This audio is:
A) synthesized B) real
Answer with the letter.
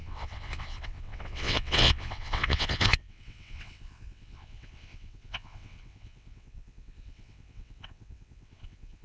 A